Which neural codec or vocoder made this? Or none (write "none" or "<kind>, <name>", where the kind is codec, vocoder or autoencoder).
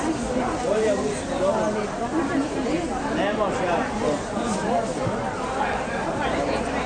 none